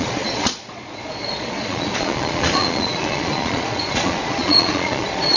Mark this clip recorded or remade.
remade